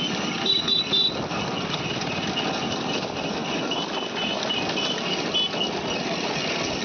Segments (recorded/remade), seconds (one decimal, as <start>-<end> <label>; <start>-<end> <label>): 0.0-6.8 recorded